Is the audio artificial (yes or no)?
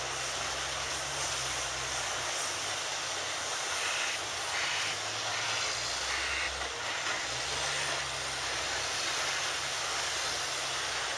no